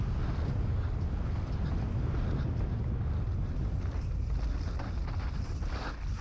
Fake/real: real